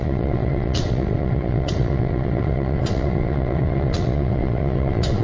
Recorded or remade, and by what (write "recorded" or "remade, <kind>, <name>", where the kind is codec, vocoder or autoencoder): remade, vocoder, WaveNeXt